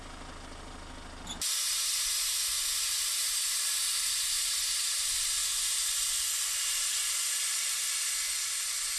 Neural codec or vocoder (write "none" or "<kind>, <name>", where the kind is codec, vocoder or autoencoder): none